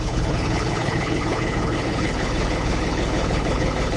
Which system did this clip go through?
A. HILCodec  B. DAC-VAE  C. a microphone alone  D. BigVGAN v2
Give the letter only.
A